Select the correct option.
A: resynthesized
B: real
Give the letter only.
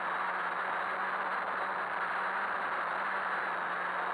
B